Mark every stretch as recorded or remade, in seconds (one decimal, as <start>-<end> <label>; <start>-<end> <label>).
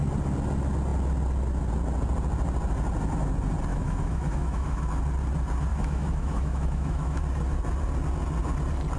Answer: 0.0-3.7 recorded; 3.7-4.9 remade; 4.9-5.7 recorded; 5.7-7.2 remade; 7.2-9.0 recorded